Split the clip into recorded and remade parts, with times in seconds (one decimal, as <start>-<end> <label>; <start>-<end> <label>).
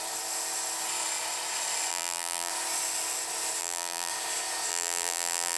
0.0-1.9 recorded; 1.9-2.5 remade; 2.5-3.6 recorded; 3.6-4.1 remade; 4.1-4.7 recorded; 4.7-5.6 remade